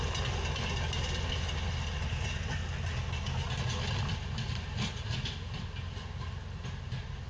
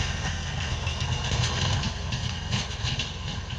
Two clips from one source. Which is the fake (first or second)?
second